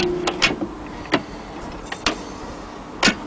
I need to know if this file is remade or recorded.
recorded